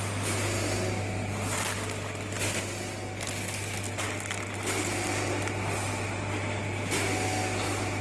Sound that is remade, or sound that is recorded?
recorded